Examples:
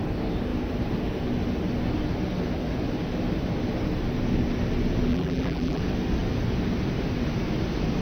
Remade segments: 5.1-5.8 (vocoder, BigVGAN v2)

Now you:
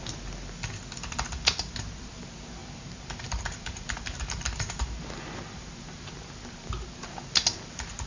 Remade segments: 2.6-6.1 (vocoder, BigVGAN v2)

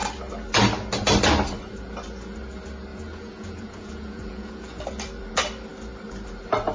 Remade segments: 2.9-4.8 (vocoder, Vocos)

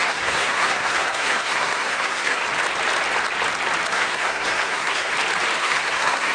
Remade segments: 0.0-2.4 (codec, SNAC); 3.9-5.1; 5.6-6.3

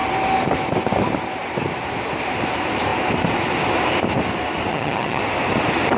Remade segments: 4.7-5.2 (vocoder, HiFi-GAN)